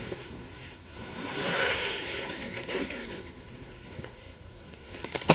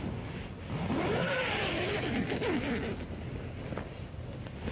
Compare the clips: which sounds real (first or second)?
second